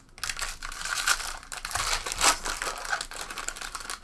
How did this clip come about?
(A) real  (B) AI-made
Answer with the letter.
A